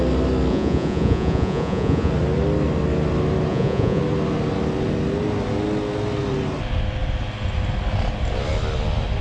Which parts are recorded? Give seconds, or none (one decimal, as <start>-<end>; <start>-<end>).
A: 0.0-0.5; 2.1-3.5; 4.0-9.2